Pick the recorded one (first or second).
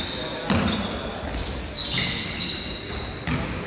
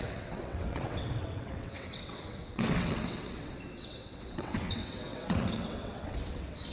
first